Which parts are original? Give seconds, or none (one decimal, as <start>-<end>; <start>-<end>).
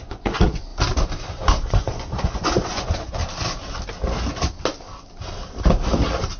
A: 0.7-1.6; 3.2-6.4